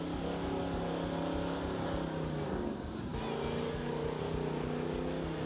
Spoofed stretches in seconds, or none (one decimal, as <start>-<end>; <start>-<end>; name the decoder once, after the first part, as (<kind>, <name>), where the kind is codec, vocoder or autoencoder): none